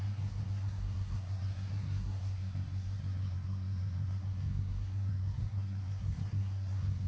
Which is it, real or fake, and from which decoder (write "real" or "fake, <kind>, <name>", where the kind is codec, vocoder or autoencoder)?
fake, codec, SNAC